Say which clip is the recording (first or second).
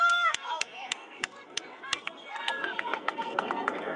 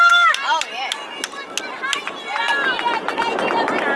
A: second